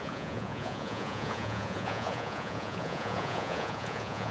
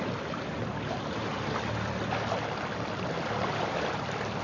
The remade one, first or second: first